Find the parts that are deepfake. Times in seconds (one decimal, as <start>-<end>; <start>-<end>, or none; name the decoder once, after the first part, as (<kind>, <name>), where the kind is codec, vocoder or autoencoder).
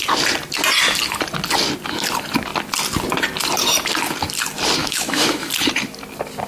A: 4.8-5.5 (autoencoder, DAC-VAE)